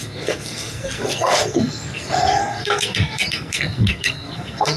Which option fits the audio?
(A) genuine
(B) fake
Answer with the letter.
B